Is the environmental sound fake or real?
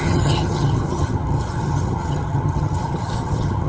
fake